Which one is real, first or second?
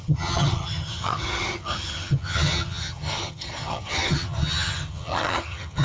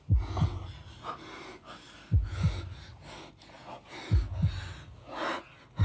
second